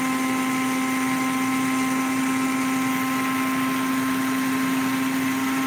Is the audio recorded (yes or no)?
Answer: yes